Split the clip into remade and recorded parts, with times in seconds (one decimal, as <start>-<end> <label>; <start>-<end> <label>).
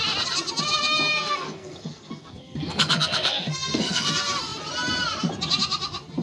0.0-1.1 recorded; 1.1-4.1 remade; 4.1-6.2 recorded